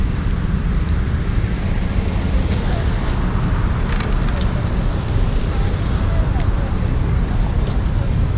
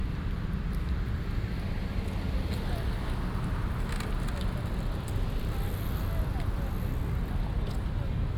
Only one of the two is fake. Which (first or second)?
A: first